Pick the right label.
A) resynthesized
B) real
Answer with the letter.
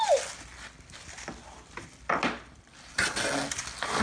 B